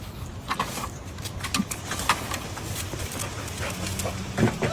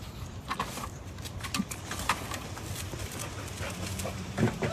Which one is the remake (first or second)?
second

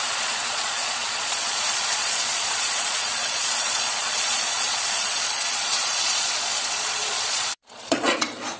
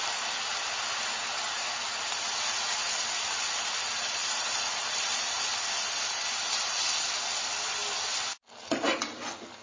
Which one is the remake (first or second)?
first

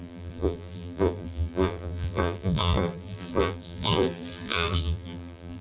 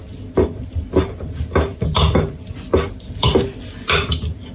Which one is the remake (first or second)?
first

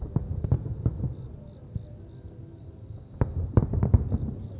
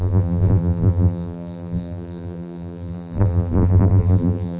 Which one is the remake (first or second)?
second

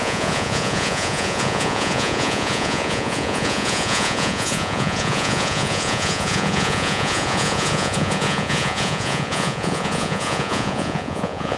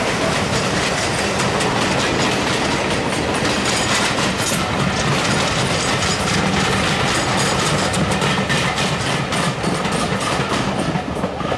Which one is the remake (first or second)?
first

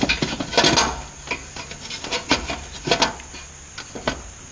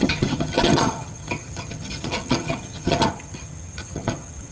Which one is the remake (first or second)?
second